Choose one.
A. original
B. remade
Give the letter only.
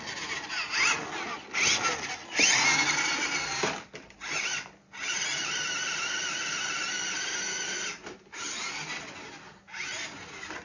A